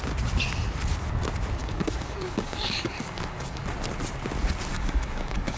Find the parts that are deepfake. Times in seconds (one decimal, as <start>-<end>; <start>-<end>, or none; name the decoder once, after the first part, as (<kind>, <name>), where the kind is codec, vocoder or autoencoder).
1.6-3.6 (codec, DAC); 4.7-5.6